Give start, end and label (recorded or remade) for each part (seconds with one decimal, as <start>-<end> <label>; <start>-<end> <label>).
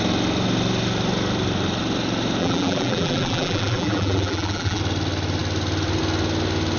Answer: 0.0-2.4 recorded; 2.4-4.8 remade; 4.8-6.8 recorded